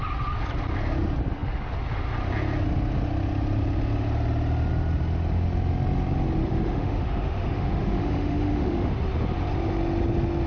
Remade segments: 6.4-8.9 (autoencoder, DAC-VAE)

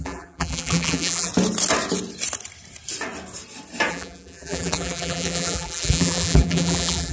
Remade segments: 0.0-1.3 (vocoder, BigVGAN v2); 3.9-7.1

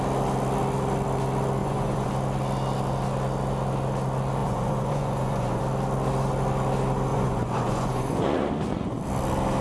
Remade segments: 1.6-2.1 (vocoder, Vocos); 4.4-5.6; 7.1-9.0

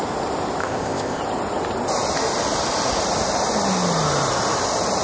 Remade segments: 0.6-1.2 (codec, ZipCodec)

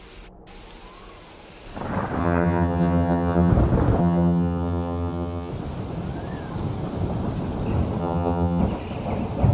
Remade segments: 2.2-3.5 (vocoder, HiFi-GAN); 4.0-5.5; 8.0-8.6